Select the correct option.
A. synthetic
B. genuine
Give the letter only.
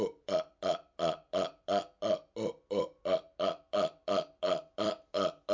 A